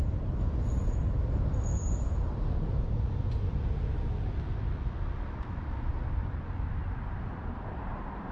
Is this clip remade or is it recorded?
recorded